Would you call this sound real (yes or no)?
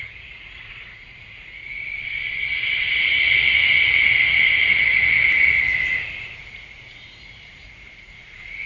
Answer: no